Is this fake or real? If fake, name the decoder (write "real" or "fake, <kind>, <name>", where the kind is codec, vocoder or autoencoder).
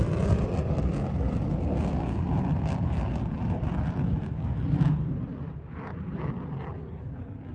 real